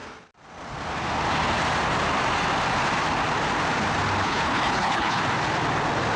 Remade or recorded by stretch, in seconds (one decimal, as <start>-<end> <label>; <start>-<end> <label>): 0.0-4.2 recorded; 4.2-5.2 remade; 5.2-6.2 recorded